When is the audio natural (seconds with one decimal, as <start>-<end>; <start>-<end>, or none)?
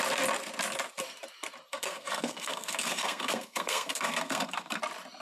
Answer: 0.0-1.7; 4.8-5.2